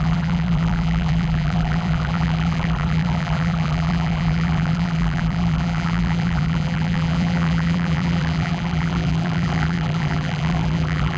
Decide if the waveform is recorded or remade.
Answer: remade